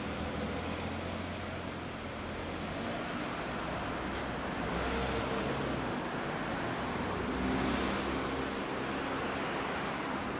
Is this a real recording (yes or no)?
yes